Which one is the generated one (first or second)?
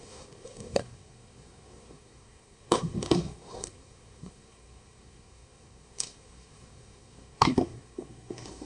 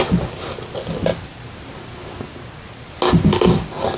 first